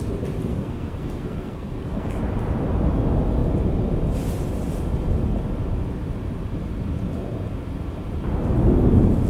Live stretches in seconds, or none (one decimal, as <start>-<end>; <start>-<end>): 0.0-0.5; 2.2-9.3